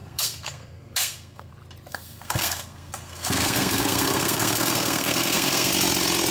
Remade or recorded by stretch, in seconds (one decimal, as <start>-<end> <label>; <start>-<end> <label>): 0.0-1.5 remade; 1.5-1.9 recorded; 1.9-5.7 remade; 5.7-6.3 recorded